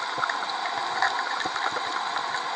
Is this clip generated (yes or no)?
no